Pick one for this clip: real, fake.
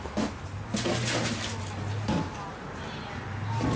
real